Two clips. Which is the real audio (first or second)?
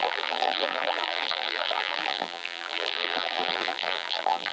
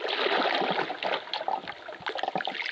second